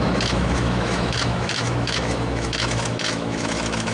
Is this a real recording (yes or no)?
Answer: no